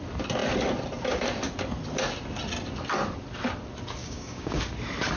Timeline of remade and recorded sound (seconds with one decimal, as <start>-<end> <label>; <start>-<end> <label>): 0.0-4.0 recorded; 4.0-4.6 remade; 4.6-5.2 recorded